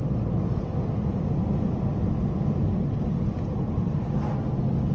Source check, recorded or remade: recorded